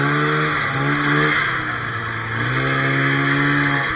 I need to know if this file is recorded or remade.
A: recorded